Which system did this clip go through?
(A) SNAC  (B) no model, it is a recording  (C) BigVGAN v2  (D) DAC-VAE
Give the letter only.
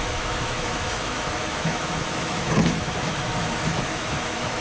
D